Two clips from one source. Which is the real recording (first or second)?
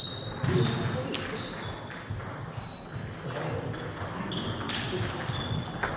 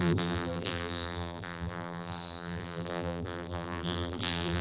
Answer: first